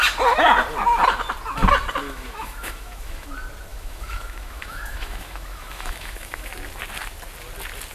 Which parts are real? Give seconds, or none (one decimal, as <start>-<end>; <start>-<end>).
0.0-2.0; 3.3-3.7; 6.5-7.9